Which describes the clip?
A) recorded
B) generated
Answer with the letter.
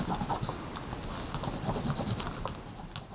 A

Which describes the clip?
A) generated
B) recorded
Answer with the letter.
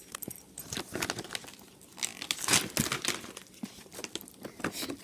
B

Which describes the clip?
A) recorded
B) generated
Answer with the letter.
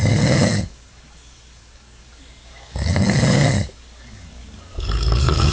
B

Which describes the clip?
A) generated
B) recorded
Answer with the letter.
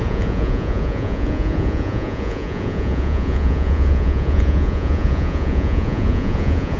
A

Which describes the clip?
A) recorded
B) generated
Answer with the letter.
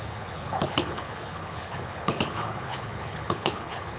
B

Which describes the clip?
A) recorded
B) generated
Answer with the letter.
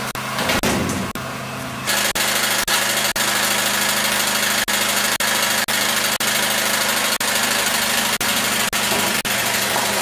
A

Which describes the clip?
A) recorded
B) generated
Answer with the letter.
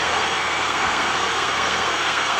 B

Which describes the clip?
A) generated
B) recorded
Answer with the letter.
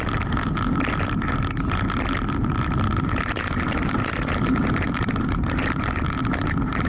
B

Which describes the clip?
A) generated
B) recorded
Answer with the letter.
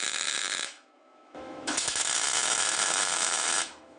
A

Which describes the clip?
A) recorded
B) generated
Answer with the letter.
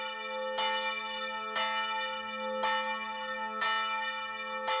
A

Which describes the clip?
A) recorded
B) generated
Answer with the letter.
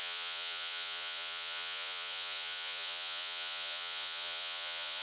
B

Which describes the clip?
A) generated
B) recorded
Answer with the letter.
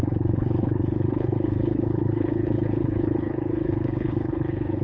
A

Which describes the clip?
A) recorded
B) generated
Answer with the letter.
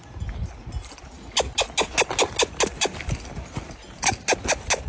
A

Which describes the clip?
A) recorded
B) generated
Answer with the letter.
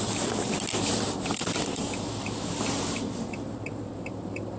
B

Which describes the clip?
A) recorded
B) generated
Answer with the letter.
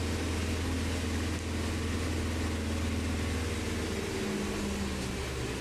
A